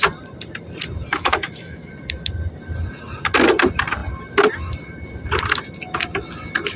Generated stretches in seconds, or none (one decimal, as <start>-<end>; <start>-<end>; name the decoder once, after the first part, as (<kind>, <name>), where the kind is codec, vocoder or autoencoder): 1.1-1.9 (autoencoder, DAC-VAE)